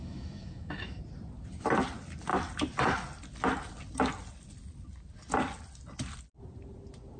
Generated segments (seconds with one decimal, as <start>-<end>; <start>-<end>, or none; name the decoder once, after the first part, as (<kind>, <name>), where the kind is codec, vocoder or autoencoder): 0.0-1.0 (autoencoder, DAC-VAE)

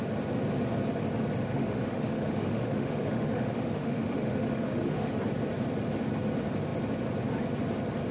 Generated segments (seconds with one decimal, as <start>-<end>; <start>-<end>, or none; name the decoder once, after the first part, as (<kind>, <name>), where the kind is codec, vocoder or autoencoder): 1.5-5.1 (autoencoder, DAC-VAE)

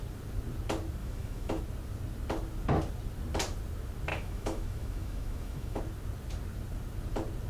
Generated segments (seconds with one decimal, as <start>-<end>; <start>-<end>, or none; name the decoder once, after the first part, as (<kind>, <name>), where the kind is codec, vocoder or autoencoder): 1.0-1.6 (autoencoder, DAC-VAE); 4.1-5.8

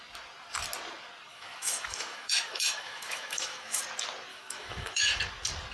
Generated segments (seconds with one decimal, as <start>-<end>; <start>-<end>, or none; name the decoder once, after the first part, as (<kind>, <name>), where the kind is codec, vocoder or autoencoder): 1.3-3.8 (autoencoder, DAC-VAE); 4.3-5.2

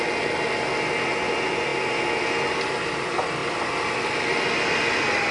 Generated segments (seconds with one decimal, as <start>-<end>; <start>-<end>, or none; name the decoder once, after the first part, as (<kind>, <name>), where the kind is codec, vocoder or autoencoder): none

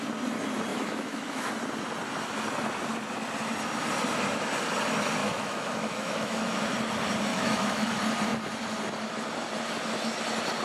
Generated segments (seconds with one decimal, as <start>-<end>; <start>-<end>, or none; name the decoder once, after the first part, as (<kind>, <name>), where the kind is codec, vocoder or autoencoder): 0.7-1.5 (autoencoder, DAC-VAE); 5.2-6.6; 7.3-7.9